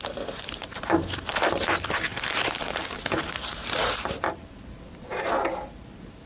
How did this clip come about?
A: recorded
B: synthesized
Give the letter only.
B